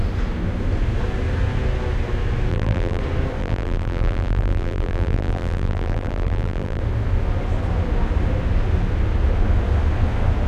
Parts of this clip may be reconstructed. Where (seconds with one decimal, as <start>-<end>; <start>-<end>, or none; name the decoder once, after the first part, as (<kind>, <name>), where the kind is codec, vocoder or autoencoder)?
2.5-3.0 (vocoder, BigVGAN v2); 3.4-6.8